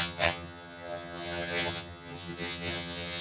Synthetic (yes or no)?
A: yes